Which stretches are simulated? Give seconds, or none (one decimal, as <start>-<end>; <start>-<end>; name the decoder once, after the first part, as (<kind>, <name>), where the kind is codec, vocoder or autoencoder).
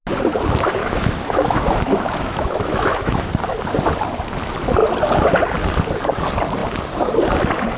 0.8-3.2 (autoencoder, DAC-VAE)